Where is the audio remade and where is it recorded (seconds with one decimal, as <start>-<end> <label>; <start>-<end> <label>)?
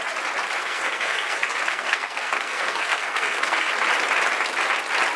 0.0-0.6 recorded; 0.6-3.7 remade; 3.7-5.2 recorded